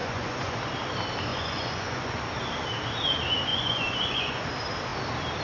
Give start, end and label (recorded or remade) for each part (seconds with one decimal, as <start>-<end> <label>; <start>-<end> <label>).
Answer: 0.0-0.6 remade; 0.6-1.3 recorded; 1.3-2.2 remade; 2.2-3.5 recorded; 3.5-4.4 remade; 4.4-5.4 recorded